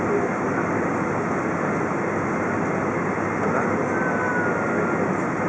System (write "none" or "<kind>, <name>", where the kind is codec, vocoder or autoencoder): none